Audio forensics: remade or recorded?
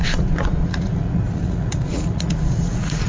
remade